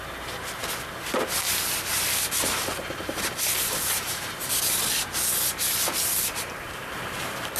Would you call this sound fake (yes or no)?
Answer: yes